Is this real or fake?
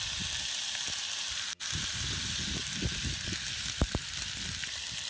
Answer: real